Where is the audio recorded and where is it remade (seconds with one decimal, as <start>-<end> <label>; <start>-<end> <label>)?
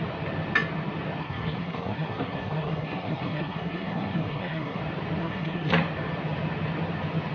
0.0-1.2 recorded; 1.2-4.8 remade; 4.8-5.2 recorded; 5.2-5.7 remade; 5.7-7.3 recorded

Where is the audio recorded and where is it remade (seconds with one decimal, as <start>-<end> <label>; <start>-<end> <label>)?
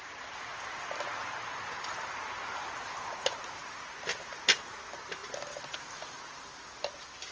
0.0-7.3 recorded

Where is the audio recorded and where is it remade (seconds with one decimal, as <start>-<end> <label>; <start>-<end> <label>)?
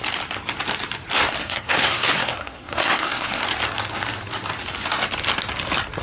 0.0-1.4 recorded; 1.4-3.4 remade; 3.4-6.0 recorded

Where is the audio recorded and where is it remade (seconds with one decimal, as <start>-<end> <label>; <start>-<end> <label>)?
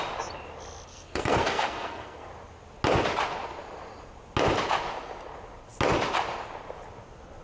0.0-0.9 recorded; 0.9-2.3 remade; 2.3-7.4 recorded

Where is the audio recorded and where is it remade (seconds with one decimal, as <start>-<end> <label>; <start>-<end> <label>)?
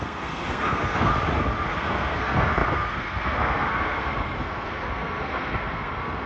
0.0-1.1 remade; 1.1-1.7 recorded; 1.7-6.3 remade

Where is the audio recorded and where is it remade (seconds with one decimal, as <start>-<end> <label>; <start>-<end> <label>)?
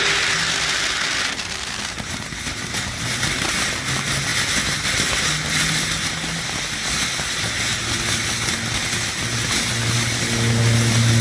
0.0-11.2 recorded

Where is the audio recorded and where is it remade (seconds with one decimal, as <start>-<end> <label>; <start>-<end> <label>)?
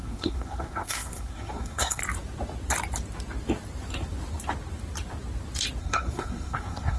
0.0-2.0 remade; 2.0-5.8 recorded; 5.8-7.0 remade